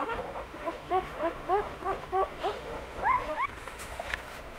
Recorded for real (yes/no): no